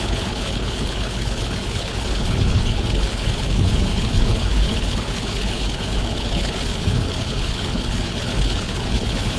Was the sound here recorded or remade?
remade